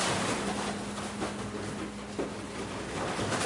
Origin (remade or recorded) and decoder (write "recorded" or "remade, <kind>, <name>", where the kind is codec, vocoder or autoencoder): recorded